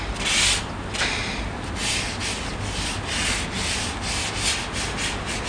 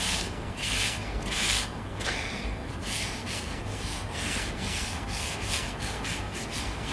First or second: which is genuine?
first